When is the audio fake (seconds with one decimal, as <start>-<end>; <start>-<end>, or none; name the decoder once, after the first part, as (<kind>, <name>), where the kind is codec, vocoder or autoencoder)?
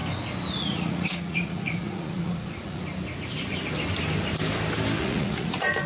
0.6-2.8 (vocoder, Vocos); 5.0-5.9